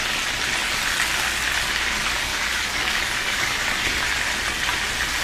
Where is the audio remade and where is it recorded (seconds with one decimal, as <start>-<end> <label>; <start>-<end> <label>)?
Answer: 0.0-2.3 recorded; 2.3-3.7 remade; 3.7-5.2 recorded